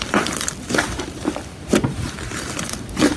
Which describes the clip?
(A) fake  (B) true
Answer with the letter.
A